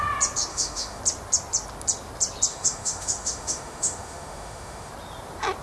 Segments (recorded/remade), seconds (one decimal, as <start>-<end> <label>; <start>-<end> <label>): 0.0-0.5 recorded; 0.5-1.0 remade; 1.0-2.5 recorded; 2.5-4.9 remade; 4.9-5.6 recorded